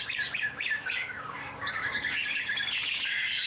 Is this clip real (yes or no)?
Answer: no